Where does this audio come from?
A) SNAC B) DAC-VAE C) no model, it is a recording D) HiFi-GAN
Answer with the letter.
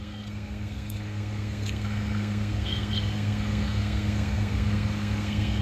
A